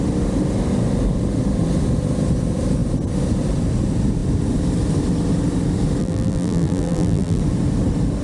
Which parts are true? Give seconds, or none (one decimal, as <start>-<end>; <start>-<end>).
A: 0.0-6.0; 7.4-8.2